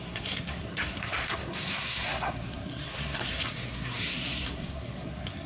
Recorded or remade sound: remade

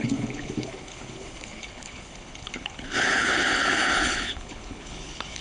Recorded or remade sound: remade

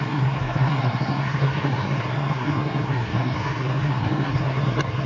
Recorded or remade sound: remade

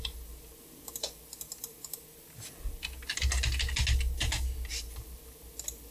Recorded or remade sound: recorded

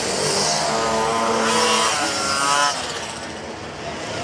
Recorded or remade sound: recorded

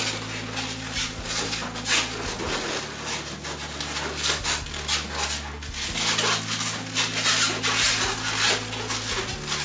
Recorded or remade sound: recorded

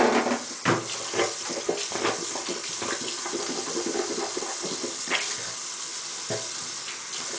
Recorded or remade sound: recorded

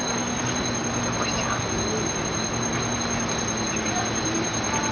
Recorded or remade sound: recorded